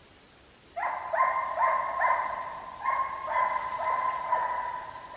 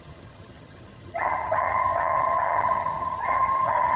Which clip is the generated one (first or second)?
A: second